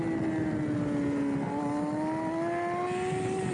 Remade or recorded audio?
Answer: recorded